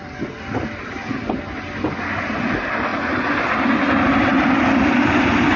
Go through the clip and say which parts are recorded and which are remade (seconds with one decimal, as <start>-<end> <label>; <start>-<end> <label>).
0.0-5.6 recorded

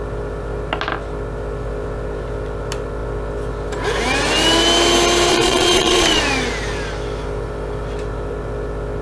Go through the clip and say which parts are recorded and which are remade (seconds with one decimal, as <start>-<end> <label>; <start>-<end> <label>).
0.0-5.3 recorded; 5.3-6.2 remade; 6.2-9.0 recorded

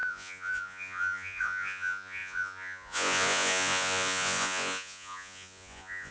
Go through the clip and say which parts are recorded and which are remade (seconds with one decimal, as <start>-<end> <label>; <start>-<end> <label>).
0.0-6.1 remade

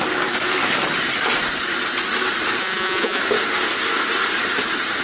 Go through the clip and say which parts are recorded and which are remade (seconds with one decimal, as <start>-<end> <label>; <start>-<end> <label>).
0.0-2.6 recorded; 2.6-3.2 remade; 3.2-5.0 recorded

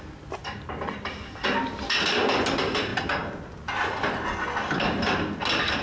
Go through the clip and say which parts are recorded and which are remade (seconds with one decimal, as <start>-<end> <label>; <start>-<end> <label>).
0.0-5.8 recorded

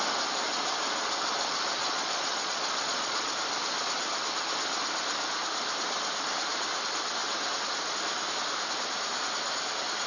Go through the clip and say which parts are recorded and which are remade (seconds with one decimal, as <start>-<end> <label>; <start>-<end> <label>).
0.0-1.8 recorded; 1.8-3.3 remade; 3.3-10.1 recorded